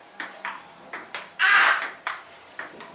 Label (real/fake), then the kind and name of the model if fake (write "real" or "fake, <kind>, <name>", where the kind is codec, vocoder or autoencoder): fake, vocoder, BigVGAN v2